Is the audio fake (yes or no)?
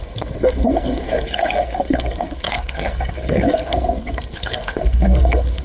yes